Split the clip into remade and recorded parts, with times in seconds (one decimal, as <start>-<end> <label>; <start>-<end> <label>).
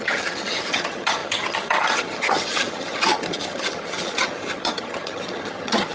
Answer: 0.0-5.9 remade